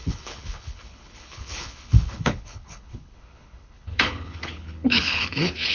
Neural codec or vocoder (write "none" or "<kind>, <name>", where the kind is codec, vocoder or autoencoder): codec, HILCodec